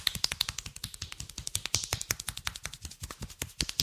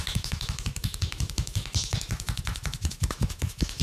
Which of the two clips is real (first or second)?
first